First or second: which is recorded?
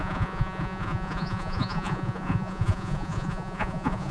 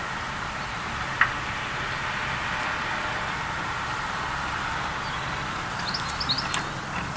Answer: second